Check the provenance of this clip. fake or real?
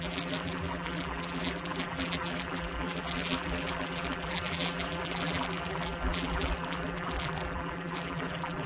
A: fake